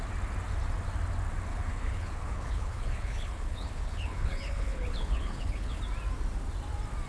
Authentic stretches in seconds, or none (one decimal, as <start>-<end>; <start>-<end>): 0.0-1.5; 5.8-7.1

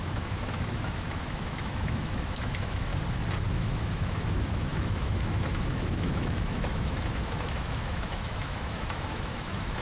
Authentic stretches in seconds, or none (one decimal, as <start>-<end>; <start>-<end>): 2.9-3.5

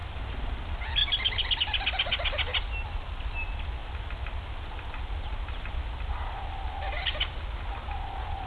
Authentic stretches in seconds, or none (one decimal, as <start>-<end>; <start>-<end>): 0.5-8.5

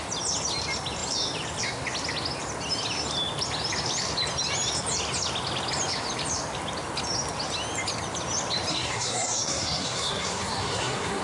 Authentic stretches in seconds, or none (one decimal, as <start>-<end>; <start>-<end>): 0.0-8.7

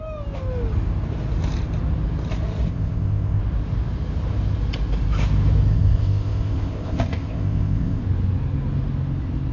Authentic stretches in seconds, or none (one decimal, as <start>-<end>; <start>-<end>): 0.0-2.7; 3.4-5.7; 8.0-9.5

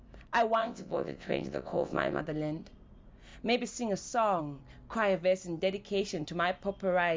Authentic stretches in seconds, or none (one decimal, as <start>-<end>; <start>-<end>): 0.0-0.6; 2.2-7.2

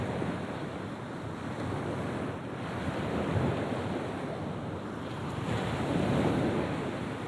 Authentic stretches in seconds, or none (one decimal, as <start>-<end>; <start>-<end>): 0.0-7.3